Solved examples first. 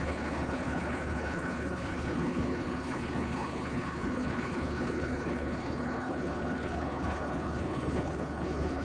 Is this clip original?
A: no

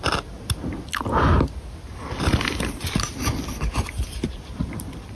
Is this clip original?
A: yes